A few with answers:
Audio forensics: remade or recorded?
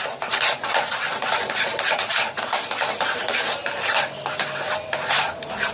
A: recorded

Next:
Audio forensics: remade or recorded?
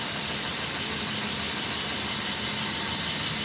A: recorded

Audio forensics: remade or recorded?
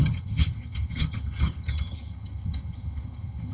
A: remade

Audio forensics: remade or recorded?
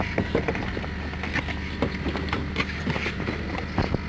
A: recorded